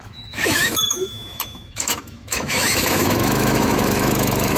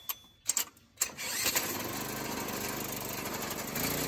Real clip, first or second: second